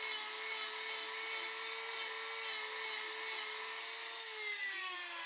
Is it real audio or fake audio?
real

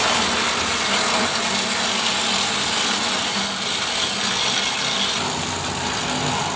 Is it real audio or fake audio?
real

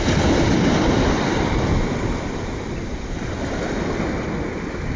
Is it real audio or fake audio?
real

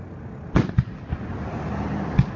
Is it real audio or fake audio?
real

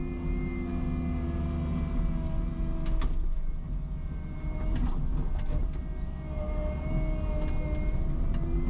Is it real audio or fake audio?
real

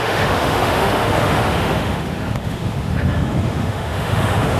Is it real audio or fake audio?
fake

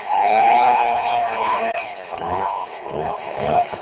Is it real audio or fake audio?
fake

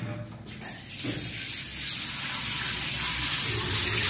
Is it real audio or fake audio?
real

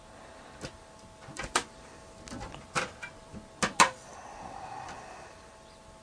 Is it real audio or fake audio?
real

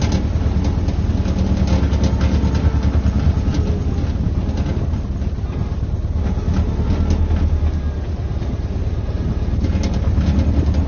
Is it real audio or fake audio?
real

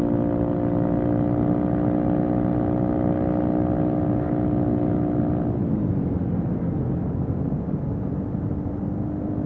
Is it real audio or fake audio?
real